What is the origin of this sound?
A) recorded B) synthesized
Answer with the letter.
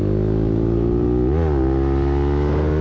A